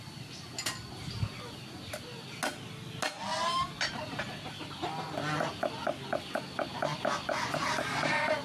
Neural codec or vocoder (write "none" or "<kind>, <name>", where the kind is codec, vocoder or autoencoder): none